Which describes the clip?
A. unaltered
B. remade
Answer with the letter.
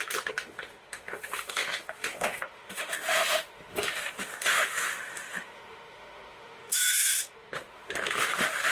B